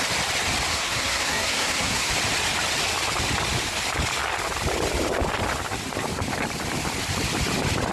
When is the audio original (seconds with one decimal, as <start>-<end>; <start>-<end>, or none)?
0.0-0.7; 2.1-7.9